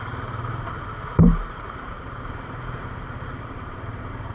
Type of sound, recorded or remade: remade